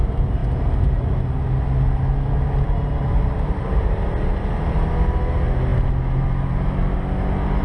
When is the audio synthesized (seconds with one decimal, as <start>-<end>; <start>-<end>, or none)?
none